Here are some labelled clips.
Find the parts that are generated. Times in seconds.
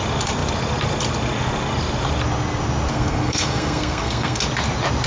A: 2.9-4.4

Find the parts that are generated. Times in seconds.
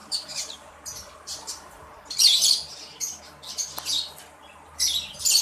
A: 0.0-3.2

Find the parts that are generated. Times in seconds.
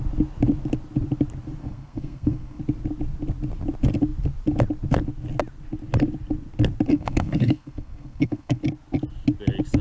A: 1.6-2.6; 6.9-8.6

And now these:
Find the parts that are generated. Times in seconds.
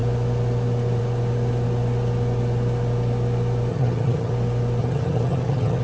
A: 3.7-4.3; 4.8-5.8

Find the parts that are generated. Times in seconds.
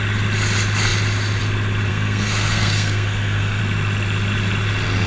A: 1.9-3.6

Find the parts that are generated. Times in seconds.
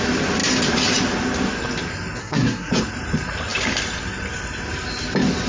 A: 2.2-2.7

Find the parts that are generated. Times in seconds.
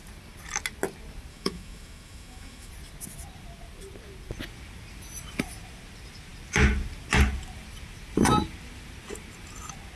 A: 1.3-2.7